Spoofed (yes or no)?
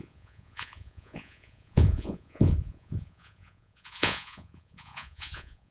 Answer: yes